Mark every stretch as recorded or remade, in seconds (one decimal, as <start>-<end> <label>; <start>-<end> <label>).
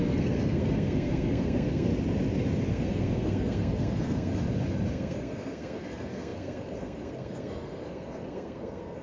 0.0-1.9 remade; 1.9-2.7 recorded; 2.7-4.3 remade; 4.3-4.9 recorded; 4.9-9.0 remade